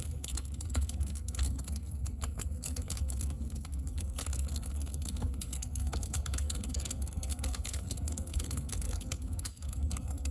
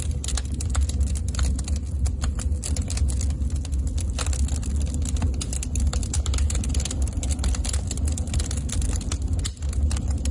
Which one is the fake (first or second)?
first